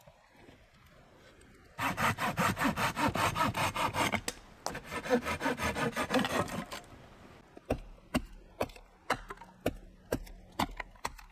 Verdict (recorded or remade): recorded